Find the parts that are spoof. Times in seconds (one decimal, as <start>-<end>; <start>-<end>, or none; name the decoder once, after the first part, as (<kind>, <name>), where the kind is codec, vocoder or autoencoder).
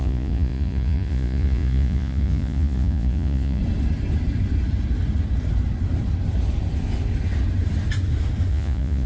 0.0-3.6 (vocoder, Vocos); 8.5-9.1